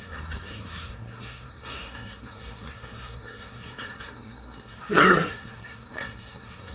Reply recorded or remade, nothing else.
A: remade